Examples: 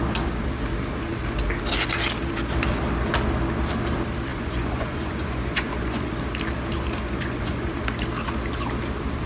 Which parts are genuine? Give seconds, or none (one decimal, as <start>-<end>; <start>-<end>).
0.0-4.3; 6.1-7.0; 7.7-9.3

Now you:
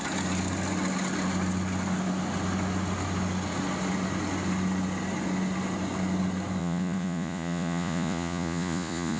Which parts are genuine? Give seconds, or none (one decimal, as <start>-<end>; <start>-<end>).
0.0-6.6

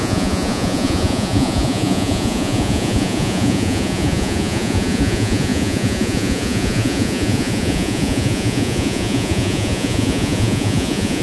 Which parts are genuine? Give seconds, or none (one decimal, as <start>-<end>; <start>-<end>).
none

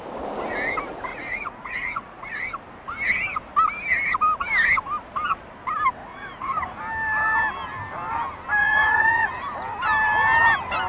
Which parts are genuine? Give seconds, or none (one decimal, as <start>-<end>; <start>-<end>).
0.0-1.1; 2.4-6.0; 6.8-8.6; 9.3-10.9

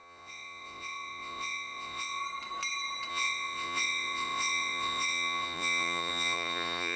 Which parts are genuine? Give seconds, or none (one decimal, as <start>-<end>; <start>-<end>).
2.2-3.1

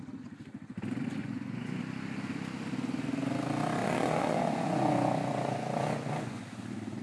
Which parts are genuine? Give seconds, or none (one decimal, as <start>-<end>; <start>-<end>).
0.0-1.2; 1.8-3.8; 6.4-7.0

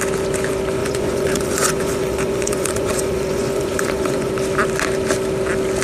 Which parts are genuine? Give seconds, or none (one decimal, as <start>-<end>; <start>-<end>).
0.0-0.8; 4.3-5.8

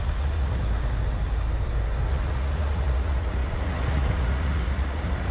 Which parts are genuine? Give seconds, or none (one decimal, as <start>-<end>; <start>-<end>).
0.6-2.1